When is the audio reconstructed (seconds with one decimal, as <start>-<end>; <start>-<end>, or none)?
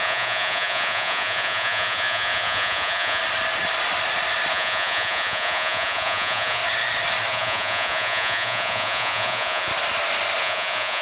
0.0-3.2; 4.5-6.6; 7.3-9.7; 10.4-11.0